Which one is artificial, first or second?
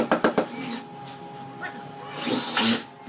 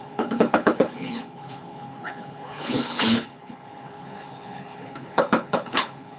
second